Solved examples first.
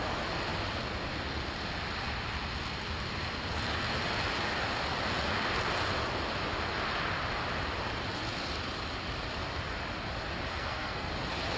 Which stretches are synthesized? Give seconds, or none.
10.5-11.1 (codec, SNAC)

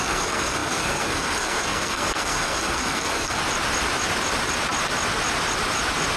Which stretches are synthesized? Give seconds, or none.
0.0-3.4 (codec, SNAC)

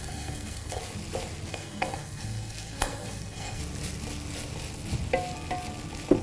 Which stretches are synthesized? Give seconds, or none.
0.0-0.8 (codec, SNAC); 1.5-3.6

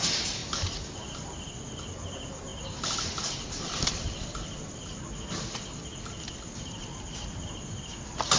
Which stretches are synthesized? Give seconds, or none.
none

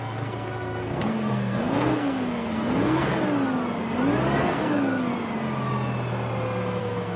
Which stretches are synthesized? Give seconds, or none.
0.0-3.1 (codec, SNAC); 4.4-5.1; 6.8-7.2

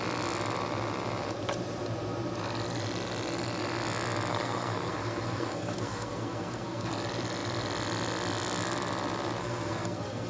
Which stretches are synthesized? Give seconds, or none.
4.3-6.9 (codec, SNAC); 9.4-10.3